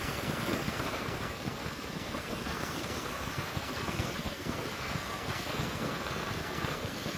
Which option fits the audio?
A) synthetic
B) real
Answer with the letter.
A